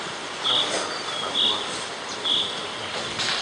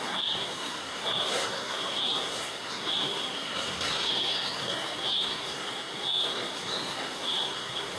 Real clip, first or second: first